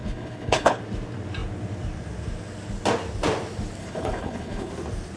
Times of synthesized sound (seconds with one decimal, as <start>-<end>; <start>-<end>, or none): 0.0-0.8; 3.8-4.7